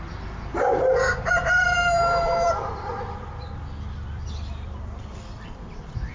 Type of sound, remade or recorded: remade